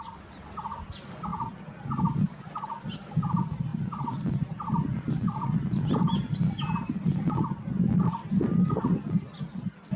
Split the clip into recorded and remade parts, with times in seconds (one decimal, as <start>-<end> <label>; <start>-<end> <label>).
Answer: 0.0-10.0 recorded